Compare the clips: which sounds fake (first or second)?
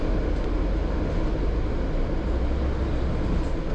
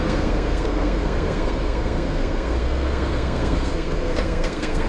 second